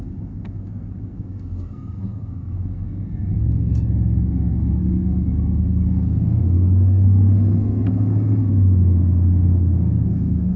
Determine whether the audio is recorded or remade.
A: remade